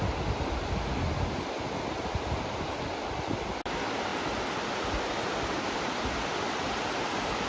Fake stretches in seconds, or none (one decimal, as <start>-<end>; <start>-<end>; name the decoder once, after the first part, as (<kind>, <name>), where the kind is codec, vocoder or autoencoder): none